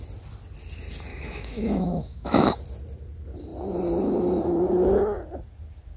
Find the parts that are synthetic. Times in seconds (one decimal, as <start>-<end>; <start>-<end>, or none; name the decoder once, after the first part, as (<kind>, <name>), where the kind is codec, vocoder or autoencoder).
1.1-2.6 (autoencoder, DAC-VAE)